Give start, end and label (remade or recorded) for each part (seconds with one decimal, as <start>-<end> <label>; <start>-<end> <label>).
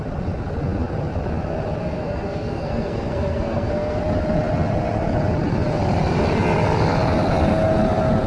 0.0-1.8 recorded; 1.8-4.0 remade; 4.0-8.3 recorded